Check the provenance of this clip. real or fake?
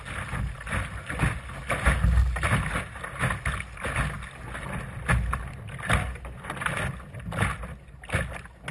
real